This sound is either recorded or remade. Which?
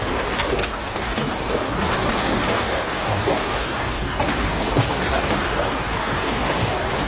remade